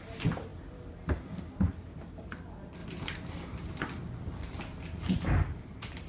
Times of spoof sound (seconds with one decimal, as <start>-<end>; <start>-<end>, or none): none